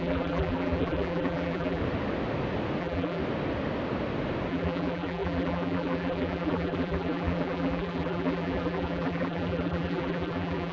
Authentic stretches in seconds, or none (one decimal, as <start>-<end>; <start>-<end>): 1.8-2.8; 3.2-4.5